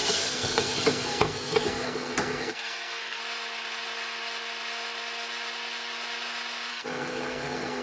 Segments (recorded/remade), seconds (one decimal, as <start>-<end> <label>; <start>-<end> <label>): 0.0-3.2 remade; 3.2-6.7 recorded; 6.7-7.8 remade